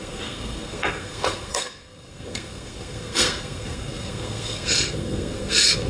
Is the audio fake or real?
fake